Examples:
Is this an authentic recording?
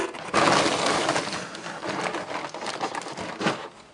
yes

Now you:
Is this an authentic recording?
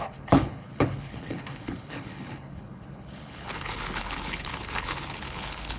no